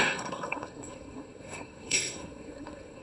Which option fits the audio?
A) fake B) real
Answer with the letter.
A